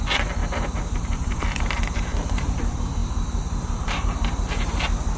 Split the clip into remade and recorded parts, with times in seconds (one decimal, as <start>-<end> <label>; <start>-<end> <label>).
0.0-0.4 recorded; 0.4-2.5 remade; 2.5-3.0 recorded; 3.0-4.8 remade; 4.8-5.2 recorded